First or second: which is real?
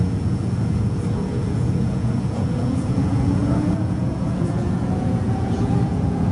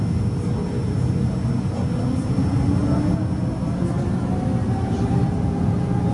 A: second